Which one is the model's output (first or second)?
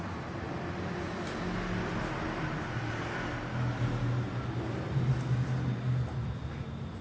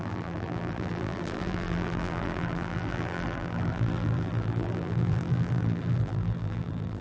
second